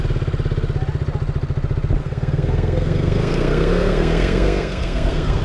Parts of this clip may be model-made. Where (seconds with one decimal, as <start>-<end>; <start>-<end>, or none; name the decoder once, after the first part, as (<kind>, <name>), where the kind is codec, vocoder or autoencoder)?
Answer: 2.0-5.4 (codec, SNAC)